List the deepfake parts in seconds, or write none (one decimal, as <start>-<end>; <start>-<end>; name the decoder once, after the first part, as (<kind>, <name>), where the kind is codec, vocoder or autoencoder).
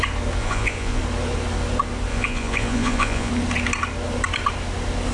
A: 0.4-1.0 (vocoder, Vocos); 2.1-3.3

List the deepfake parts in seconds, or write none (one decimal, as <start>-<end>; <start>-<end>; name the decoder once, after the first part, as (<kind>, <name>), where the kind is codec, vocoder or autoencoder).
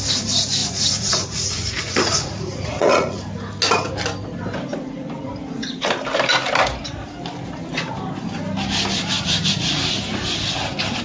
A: 0.6-3.2 (vocoder, Vocos)